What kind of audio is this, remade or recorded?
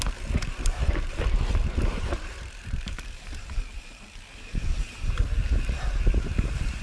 remade